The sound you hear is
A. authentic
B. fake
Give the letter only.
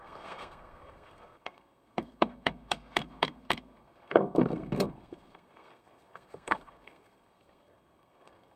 B